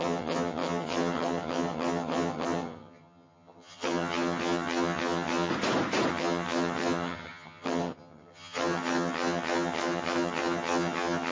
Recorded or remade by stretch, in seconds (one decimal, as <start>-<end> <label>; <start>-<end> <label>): 0.0-5.5 remade; 5.5-6.1 recorded; 6.1-11.3 remade